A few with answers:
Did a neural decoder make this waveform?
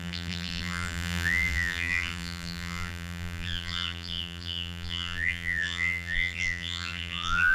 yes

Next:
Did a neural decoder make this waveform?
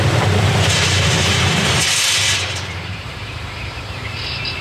yes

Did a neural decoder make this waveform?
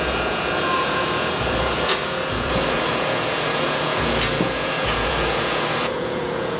yes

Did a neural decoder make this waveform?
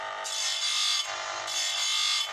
no